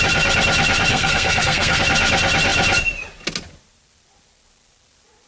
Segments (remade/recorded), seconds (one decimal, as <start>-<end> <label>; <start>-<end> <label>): 0.0-0.9 recorded; 0.9-1.8 remade; 1.8-5.3 recorded